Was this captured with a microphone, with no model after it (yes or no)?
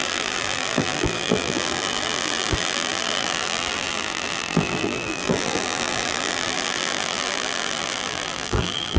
no